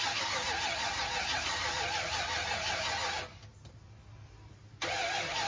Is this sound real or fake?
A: real